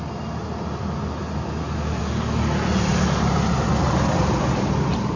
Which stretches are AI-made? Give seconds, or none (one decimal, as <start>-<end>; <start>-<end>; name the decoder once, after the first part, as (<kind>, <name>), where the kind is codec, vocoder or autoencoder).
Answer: none